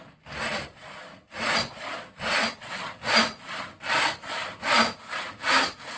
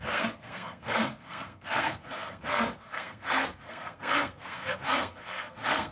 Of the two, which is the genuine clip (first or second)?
first